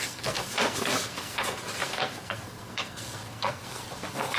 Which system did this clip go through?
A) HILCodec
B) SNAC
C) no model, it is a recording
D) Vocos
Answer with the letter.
B